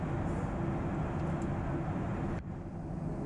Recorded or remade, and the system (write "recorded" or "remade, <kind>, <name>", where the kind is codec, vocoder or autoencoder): recorded